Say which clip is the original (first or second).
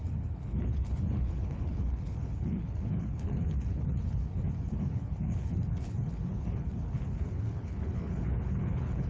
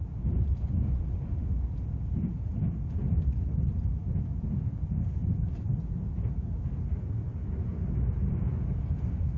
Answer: second